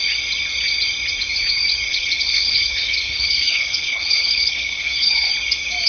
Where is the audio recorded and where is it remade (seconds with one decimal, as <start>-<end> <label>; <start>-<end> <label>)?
0.0-1.9 recorded; 1.9-5.3 remade; 5.3-5.9 recorded